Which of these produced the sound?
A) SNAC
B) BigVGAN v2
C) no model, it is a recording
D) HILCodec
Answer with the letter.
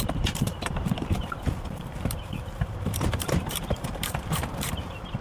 B